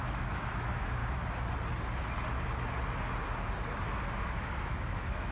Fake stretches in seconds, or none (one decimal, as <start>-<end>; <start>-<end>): 0.0-1.0; 4.2-5.3